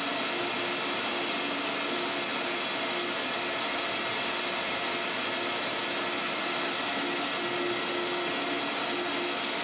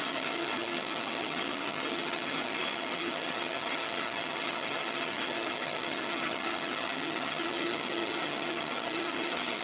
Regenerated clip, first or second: second